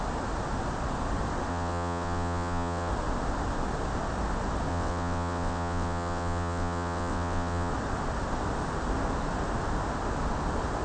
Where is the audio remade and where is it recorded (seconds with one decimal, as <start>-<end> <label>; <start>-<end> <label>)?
0.0-1.5 recorded; 1.5-2.9 remade; 2.9-4.7 recorded; 4.7-7.7 remade; 7.7-10.8 recorded